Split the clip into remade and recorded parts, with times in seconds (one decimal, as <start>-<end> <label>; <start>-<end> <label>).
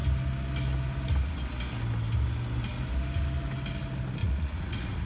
0.0-4.2 recorded; 4.2-5.1 remade